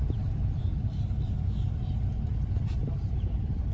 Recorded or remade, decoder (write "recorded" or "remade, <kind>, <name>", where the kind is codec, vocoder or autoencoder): remade, vocoder, BigVGAN v2